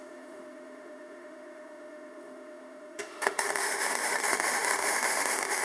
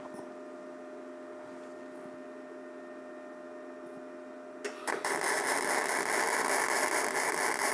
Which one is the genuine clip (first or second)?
second